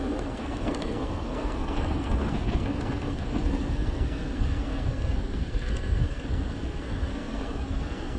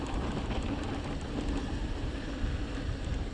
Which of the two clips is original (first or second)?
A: second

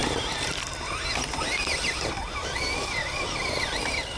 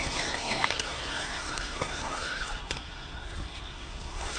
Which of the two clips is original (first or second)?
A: first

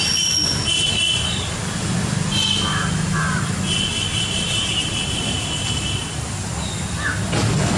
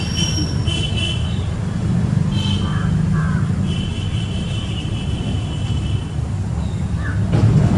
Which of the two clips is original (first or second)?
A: first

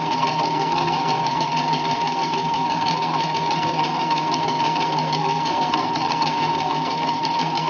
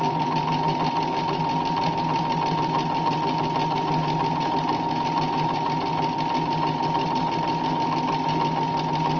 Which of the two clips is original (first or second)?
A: second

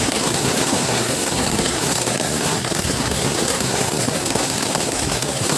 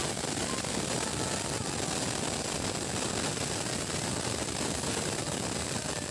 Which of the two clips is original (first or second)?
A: second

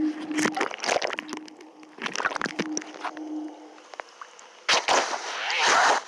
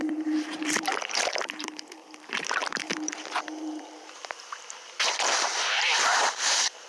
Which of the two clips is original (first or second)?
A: first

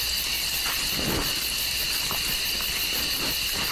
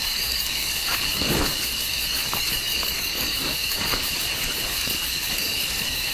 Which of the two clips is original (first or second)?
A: first